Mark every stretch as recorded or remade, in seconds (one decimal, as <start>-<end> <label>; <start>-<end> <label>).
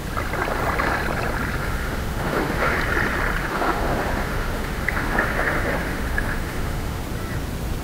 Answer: 0.0-1.6 recorded; 1.6-2.8 remade; 2.8-3.4 recorded; 3.4-7.0 remade; 7.0-7.8 recorded